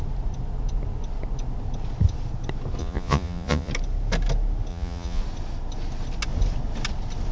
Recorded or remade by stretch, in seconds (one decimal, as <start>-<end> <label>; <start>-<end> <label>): 0.0-2.8 recorded; 2.8-3.7 remade; 3.7-4.7 recorded; 4.7-5.2 remade; 5.2-7.3 recorded